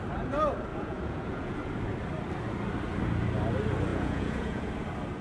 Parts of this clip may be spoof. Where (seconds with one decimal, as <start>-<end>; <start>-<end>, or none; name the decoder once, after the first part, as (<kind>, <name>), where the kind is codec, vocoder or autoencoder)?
0.7-1.7 (vocoder, Vocos); 3.9-4.7